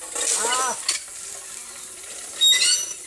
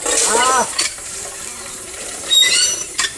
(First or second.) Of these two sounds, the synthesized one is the second